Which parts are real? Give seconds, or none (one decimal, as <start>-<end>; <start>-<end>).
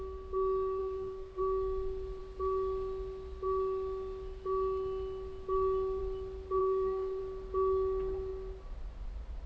0.0-0.8; 1.4-6.6; 7.2-9.5